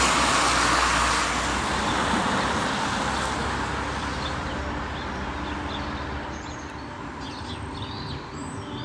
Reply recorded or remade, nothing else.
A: recorded